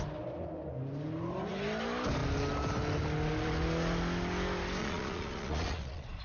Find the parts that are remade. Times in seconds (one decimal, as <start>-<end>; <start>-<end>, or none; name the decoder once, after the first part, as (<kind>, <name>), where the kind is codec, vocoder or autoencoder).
4.8-6.2 (vocoder, Vocos)